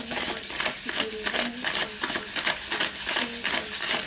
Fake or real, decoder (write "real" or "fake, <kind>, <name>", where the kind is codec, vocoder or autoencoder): real